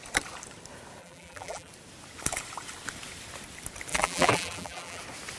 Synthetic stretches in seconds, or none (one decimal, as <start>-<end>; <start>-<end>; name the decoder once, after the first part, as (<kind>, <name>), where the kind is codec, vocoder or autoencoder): 1.0-1.7 (vocoder, BigVGAN v2); 3.9-5.0